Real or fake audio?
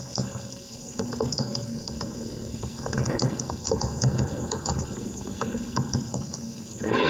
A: fake